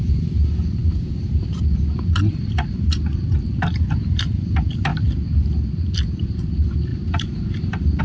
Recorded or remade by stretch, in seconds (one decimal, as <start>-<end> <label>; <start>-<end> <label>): 0.0-4.9 remade; 4.9-6.2 recorded; 6.2-8.0 remade